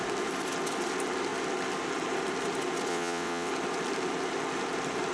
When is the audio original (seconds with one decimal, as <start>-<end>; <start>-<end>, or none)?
0.0-2.9; 3.5-5.1